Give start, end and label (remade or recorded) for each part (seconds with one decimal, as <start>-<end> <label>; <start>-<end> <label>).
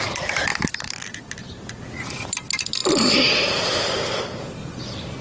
0.0-0.5 recorded; 0.5-1.8 remade; 1.8-2.8 recorded; 2.8-4.8 remade; 4.8-5.2 recorded